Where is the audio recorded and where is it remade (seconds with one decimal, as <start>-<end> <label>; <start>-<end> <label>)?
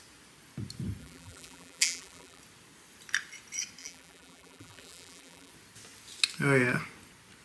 0.0-1.0 recorded; 1.0-2.4 remade; 2.4-3.8 recorded; 3.8-5.5 remade; 5.5-7.4 recorded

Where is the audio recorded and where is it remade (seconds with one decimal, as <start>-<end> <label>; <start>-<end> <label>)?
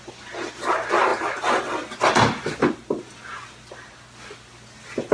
0.0-5.1 recorded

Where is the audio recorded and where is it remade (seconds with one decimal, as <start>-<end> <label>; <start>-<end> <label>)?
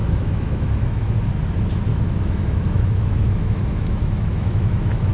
0.0-1.1 remade; 1.1-1.9 recorded; 1.9-5.1 remade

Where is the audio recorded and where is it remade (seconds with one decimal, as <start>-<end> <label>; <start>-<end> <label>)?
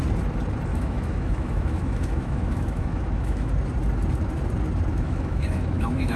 0.0-0.7 recorded; 0.7-3.5 remade; 3.5-4.9 recorded; 4.9-6.2 remade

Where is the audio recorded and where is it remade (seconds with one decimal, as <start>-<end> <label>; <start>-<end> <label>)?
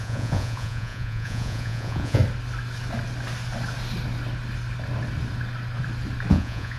0.0-2.2 remade; 2.2-6.3 recorded; 6.3-6.8 remade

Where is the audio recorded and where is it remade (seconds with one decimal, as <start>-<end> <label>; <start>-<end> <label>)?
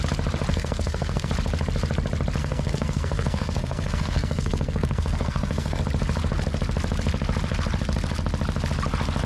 0.0-0.5 recorded; 0.5-1.3 remade; 1.3-2.4 recorded; 2.4-5.8 remade; 5.8-9.3 recorded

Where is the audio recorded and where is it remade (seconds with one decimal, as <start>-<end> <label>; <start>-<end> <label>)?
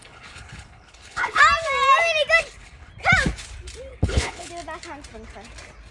0.0-1.4 remade; 1.4-2.4 recorded; 2.4-2.9 remade; 2.9-3.9 recorded; 3.9-4.5 remade; 4.5-5.9 recorded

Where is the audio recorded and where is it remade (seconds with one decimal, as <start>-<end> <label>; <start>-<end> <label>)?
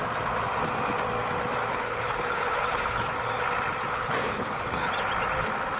0.0-1.7 recorded; 1.7-3.1 remade; 3.1-3.9 recorded; 3.9-4.9 remade; 4.9-5.8 recorded